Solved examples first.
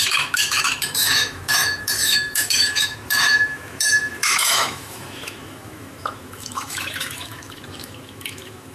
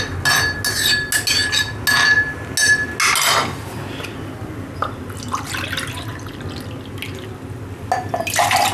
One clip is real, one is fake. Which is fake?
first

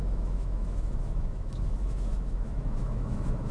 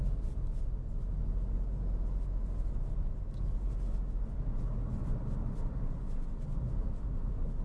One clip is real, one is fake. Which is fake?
first